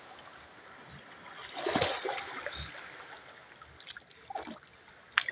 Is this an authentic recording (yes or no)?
yes